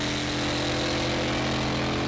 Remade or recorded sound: recorded